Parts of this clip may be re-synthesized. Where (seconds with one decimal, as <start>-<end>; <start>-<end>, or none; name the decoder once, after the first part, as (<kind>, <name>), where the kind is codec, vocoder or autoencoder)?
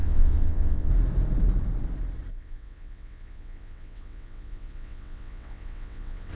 0.0-0.9 (vocoder, WaveNeXt); 2.3-6.3